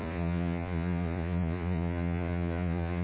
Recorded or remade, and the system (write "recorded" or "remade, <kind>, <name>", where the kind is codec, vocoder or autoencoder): remade, vocoder, Vocos